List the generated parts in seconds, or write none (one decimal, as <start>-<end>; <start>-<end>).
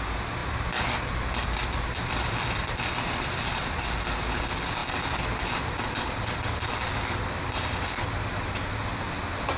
0.4-3.7